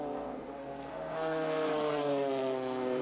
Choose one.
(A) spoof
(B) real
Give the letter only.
A